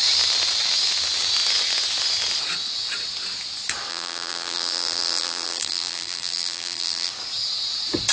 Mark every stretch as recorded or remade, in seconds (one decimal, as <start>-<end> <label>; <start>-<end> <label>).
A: 0.0-3.9 recorded; 3.9-7.1 remade; 7.1-8.1 recorded